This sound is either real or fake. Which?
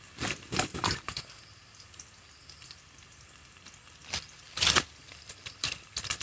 fake